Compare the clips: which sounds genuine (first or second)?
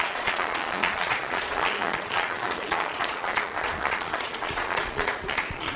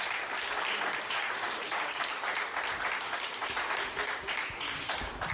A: second